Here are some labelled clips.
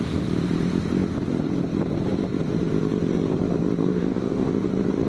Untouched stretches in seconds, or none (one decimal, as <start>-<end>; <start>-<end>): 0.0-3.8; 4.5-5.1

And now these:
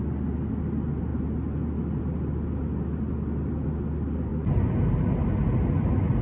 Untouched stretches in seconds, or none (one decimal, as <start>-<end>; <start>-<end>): 0.0-6.2

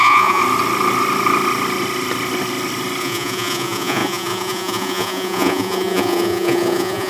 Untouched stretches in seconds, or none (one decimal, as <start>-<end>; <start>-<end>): 0.4-3.0

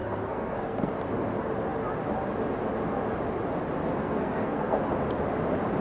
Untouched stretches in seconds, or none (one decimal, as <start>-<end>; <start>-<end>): 0.9-4.0; 4.8-5.8

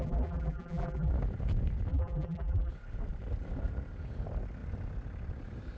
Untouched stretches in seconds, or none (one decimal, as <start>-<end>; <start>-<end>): 1.1-1.9; 2.7-5.8

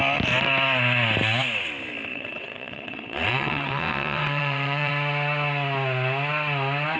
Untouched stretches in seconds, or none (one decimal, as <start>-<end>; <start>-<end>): 0.0-2.1; 4.9-7.0

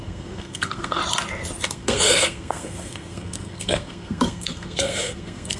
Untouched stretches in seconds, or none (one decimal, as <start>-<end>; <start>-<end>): 1.0-1.7